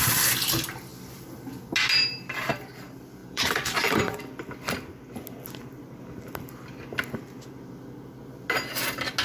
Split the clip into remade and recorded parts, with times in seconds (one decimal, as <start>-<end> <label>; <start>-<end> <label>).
0.0-3.2 recorded; 3.2-4.2 remade; 4.2-9.2 recorded